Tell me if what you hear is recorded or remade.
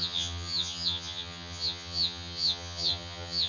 remade